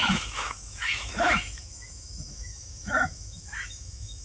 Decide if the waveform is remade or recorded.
remade